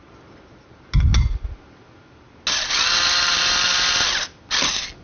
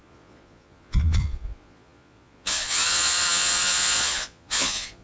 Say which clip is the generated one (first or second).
second